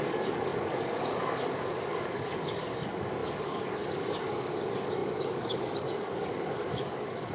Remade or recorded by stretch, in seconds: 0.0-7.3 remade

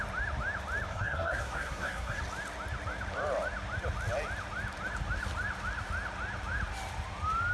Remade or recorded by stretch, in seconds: 0.0-0.9 recorded; 0.9-2.2 remade; 2.2-7.5 recorded

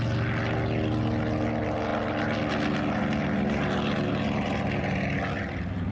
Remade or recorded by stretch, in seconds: 0.0-1.9 recorded; 1.9-2.5 remade; 2.5-5.9 recorded

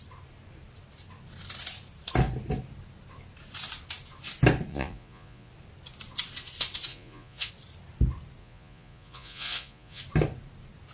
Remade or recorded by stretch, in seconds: 0.0-4.7 recorded; 4.7-5.5 remade; 5.5-6.9 recorded; 6.9-7.5 remade; 7.5-8.4 recorded; 8.4-10.0 remade; 10.0-10.9 recorded

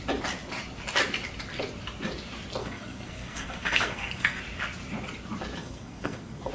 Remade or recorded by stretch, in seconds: 0.0-2.6 recorded; 2.6-4.4 remade; 4.4-5.6 recorded; 5.6-6.5 remade

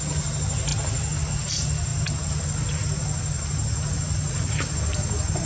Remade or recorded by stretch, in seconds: 0.0-5.5 recorded

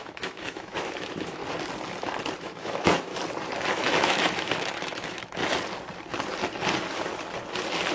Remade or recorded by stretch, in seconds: 0.0-1.4 remade; 1.4-2.4 recorded; 2.4-3.1 remade; 3.1-3.7 recorded; 3.7-5.4 remade; 5.4-7.9 recorded